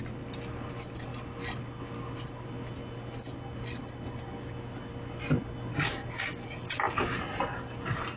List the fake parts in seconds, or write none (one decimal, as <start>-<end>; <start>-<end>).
none